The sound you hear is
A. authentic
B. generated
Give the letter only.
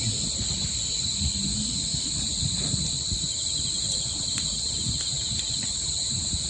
A